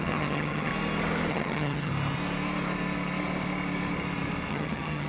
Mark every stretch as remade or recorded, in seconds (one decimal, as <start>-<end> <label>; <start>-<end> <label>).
0.0-0.7 remade; 0.7-1.3 recorded; 1.3-1.9 remade; 1.9-4.5 recorded; 4.5-5.1 remade